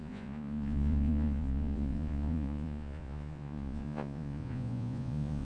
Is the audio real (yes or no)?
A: no